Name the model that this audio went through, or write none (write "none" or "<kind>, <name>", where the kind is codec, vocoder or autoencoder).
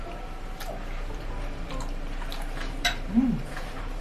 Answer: vocoder, BigVGAN v2